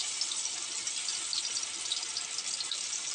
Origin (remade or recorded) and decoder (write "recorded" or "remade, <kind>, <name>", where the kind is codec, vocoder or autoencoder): recorded